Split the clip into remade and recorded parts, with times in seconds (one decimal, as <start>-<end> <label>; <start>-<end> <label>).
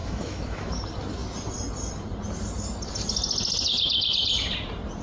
0.0-0.7 remade; 0.7-5.0 recorded